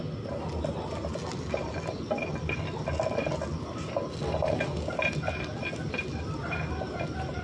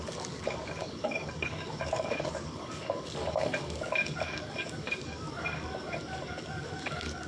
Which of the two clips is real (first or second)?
first